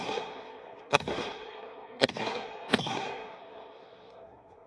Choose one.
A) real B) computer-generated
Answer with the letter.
B